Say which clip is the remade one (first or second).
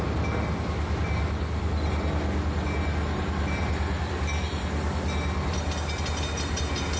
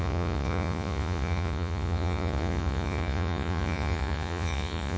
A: second